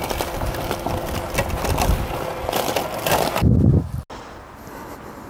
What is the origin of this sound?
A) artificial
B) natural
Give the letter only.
B